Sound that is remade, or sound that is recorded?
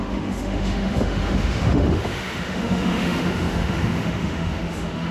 remade